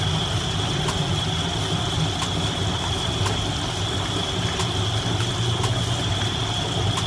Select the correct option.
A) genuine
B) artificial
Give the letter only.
A